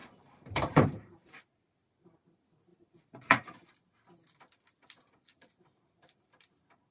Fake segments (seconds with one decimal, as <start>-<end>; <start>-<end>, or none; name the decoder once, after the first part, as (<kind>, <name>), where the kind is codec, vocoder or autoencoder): 0.0-1.4 (vocoder, BigVGAN v2); 2.7-3.7